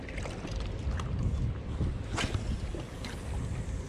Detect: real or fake real